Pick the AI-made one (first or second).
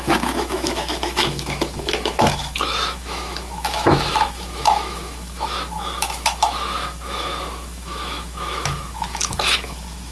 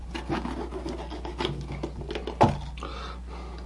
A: first